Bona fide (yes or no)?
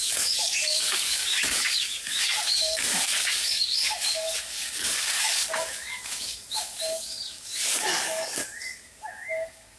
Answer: no